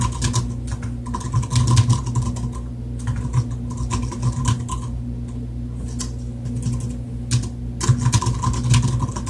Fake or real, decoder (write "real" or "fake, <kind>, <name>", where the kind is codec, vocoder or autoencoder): real